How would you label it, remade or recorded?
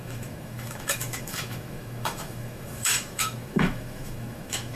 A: remade